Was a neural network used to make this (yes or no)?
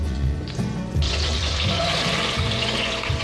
yes